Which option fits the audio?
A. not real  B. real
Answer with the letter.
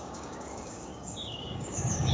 A